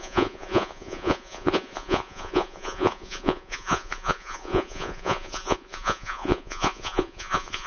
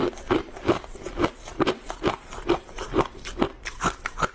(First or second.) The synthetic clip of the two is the first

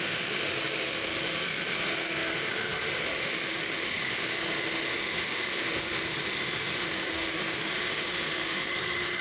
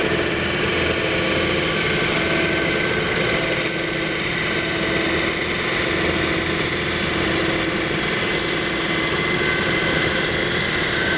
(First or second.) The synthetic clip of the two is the first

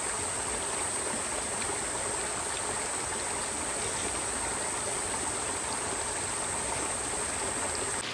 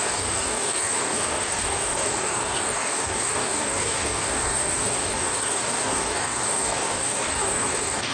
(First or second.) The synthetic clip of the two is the second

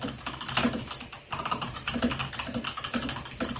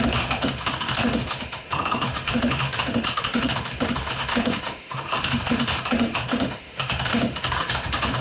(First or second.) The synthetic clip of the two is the second